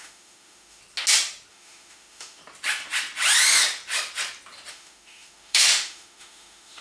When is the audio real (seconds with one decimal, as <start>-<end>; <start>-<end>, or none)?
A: 0.8-1.5; 2.4-4.7